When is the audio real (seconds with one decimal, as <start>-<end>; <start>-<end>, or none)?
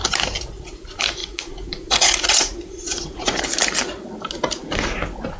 0.0-1.2; 3.4-5.4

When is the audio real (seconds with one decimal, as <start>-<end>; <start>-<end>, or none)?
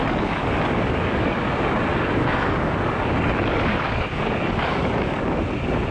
1.5-1.9; 5.4-5.9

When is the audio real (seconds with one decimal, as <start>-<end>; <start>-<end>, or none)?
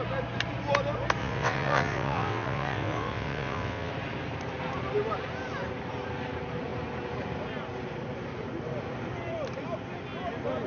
0.0-1.2; 3.9-10.7